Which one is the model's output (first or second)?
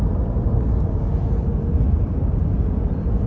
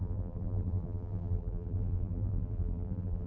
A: second